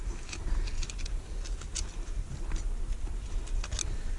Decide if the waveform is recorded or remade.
recorded